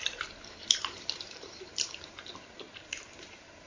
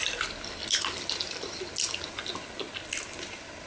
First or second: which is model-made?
first